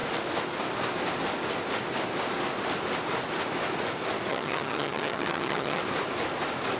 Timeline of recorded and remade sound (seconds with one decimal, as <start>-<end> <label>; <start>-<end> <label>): 0.0-4.3 recorded; 4.3-5.8 remade; 5.8-6.8 recorded